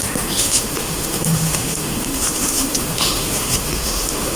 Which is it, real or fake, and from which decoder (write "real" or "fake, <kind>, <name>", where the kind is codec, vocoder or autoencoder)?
fake, autoencoder, DAC-VAE